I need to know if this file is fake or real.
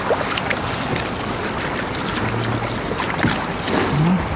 real